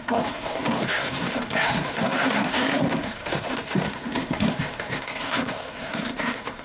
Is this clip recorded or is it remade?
remade